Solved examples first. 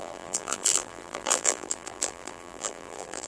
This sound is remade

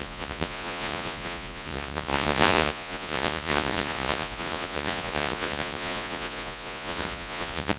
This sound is remade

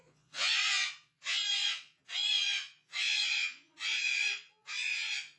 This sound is remade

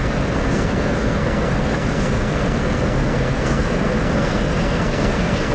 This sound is remade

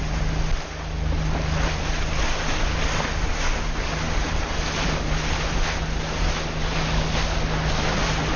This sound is recorded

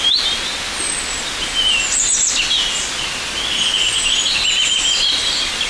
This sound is recorded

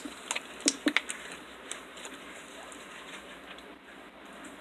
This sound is recorded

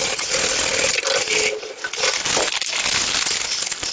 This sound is recorded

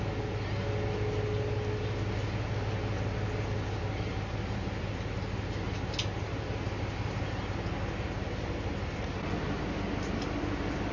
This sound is recorded